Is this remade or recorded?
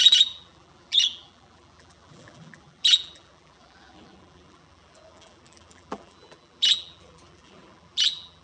remade